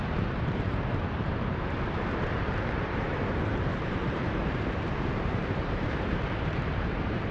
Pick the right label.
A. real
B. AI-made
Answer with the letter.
B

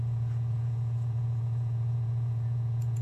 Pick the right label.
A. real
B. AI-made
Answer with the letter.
B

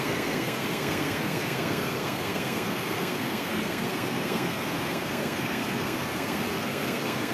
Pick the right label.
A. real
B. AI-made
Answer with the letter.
B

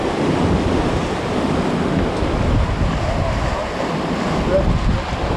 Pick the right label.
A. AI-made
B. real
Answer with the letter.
B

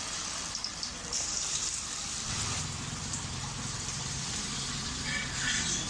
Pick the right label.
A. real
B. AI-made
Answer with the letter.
B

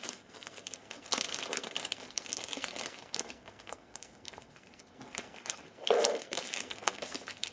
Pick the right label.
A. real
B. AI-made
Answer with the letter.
B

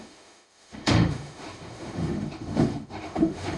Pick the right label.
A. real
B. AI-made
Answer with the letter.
B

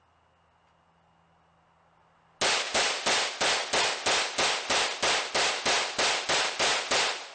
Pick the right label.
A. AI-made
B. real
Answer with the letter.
B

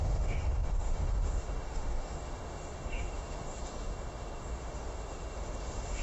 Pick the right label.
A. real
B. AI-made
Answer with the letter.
B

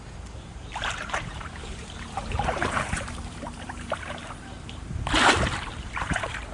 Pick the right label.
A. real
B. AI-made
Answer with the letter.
B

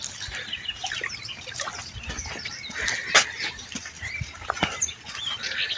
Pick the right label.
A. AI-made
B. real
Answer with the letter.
B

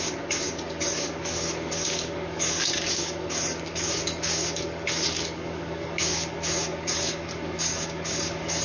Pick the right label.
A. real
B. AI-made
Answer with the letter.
B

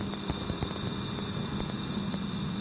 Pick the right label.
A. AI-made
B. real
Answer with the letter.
B